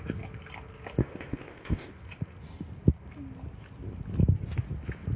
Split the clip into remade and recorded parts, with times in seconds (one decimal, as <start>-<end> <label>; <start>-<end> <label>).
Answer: 0.0-1.0 recorded; 1.0-1.9 remade; 1.9-5.2 recorded